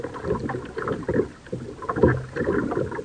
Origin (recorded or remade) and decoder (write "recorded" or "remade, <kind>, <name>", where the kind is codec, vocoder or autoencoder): recorded